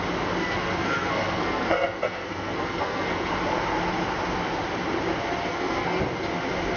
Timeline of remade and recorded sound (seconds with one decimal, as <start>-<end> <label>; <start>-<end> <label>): 0.0-0.4 recorded; 0.4-3.3 remade; 3.3-5.5 recorded; 5.5-6.0 remade; 6.0-6.8 recorded